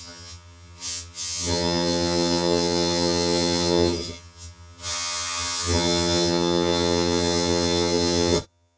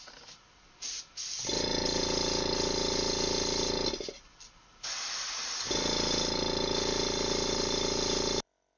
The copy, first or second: first